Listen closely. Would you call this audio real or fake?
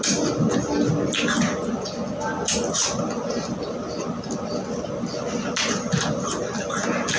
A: real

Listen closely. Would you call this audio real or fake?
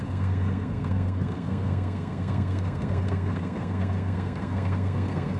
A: fake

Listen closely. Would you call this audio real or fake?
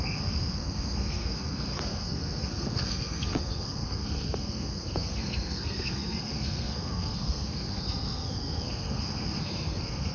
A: fake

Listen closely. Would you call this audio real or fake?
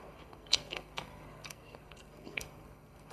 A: fake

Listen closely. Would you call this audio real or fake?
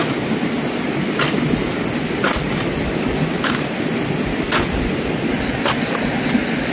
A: real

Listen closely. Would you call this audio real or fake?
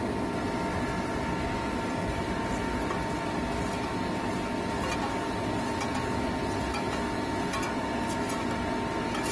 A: real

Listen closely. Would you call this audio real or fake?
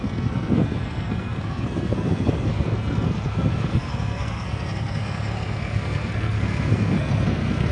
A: fake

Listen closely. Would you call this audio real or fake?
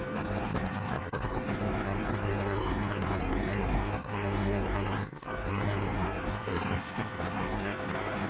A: fake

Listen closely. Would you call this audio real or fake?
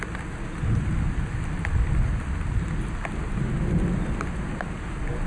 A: real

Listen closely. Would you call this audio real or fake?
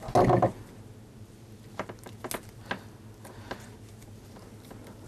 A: real